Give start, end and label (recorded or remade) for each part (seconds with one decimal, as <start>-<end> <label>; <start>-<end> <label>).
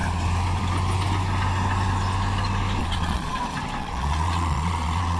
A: 0.0-2.8 recorded; 2.8-3.4 remade; 3.4-3.8 recorded; 3.8-5.2 remade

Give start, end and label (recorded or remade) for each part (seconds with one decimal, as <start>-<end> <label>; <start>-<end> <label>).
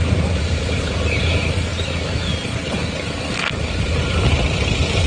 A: 0.0-1.7 remade; 1.7-5.1 recorded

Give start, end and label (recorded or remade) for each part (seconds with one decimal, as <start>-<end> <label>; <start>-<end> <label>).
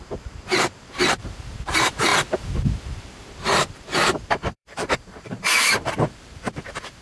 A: 0.0-7.0 remade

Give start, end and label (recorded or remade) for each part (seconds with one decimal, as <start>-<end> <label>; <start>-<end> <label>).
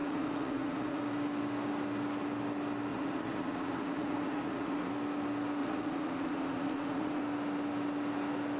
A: 0.0-1.0 remade; 1.0-2.9 recorded; 2.9-4.9 remade; 4.9-5.6 recorded; 5.6-7.2 remade; 7.2-8.6 recorded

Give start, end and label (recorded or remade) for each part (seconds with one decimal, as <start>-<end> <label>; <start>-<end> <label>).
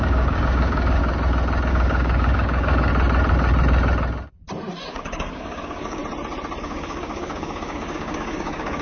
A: 0.0-1.0 remade; 1.0-1.7 recorded; 1.7-2.9 remade; 2.9-4.9 recorded; 4.9-6.0 remade; 6.0-6.6 recorded; 6.6-8.8 remade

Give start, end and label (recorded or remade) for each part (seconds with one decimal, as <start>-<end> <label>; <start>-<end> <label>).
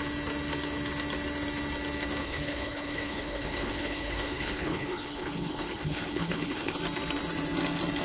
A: 0.0-2.2 recorded; 2.2-6.8 remade; 6.8-8.0 recorded